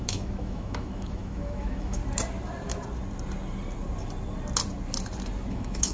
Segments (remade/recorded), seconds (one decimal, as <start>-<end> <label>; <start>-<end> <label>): 0.0-2.0 remade; 2.0-5.5 recorded; 5.5-5.9 remade